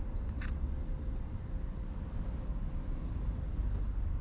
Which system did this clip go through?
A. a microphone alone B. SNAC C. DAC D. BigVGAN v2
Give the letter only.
A